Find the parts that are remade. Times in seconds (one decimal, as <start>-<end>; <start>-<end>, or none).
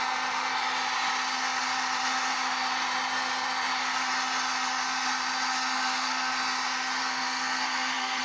5.5-6.3; 7.0-8.2